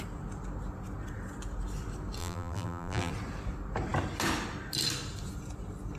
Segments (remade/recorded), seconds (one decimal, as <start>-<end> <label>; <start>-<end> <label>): 0.0-2.2 recorded; 2.2-3.1 remade; 3.1-6.0 recorded